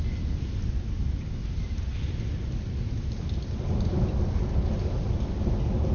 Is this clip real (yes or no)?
yes